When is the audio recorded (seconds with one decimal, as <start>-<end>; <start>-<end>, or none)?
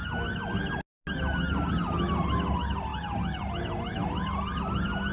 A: 0.0-5.1